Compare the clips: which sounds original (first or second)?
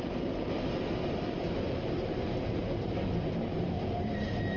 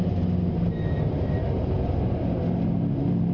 second